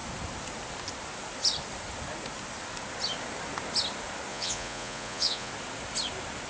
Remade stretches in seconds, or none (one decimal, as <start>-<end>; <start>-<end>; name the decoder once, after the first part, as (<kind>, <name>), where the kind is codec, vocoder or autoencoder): 4.3-5.5 (vocoder, Vocos)